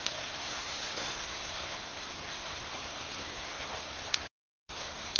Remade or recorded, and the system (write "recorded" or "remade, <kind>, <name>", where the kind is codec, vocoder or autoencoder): remade, codec, SNAC